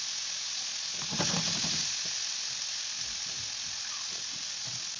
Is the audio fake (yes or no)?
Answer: no